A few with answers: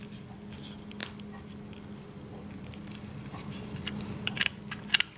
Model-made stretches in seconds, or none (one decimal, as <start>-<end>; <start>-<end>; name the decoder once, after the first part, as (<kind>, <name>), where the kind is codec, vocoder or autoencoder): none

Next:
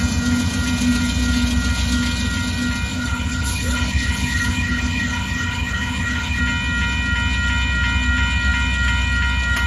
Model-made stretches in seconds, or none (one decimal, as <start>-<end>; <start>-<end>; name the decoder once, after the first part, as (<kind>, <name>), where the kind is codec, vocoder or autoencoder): 2.9-6.4 (codec, HILCodec)

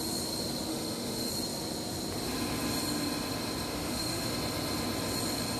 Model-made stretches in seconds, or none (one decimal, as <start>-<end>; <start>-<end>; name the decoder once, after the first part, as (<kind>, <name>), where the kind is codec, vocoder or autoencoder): 0.7-1.3 (autoencoder, DAC-VAE); 3.7-4.3

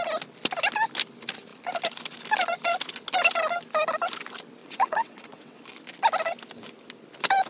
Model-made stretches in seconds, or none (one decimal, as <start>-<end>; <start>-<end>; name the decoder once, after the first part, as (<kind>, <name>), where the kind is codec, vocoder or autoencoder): 4.6-5.6 (vocoder, WaveNeXt)